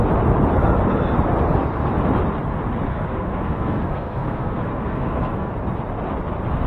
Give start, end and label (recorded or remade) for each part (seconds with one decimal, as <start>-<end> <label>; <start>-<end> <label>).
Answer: 0.0-2.9 recorded; 2.9-5.5 remade; 5.5-6.7 recorded